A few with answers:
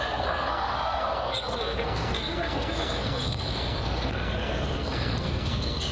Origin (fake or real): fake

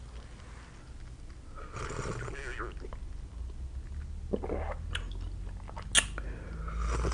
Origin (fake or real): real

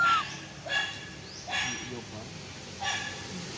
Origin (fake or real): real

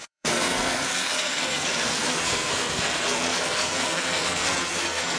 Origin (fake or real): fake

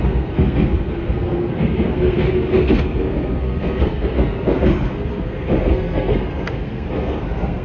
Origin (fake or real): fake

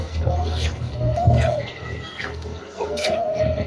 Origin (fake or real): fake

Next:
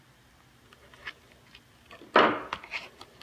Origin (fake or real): real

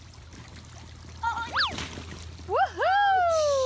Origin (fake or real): real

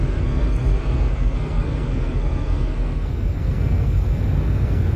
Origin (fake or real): fake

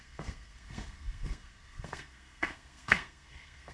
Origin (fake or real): fake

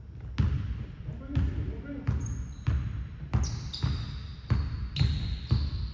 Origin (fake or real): real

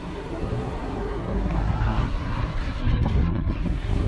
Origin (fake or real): fake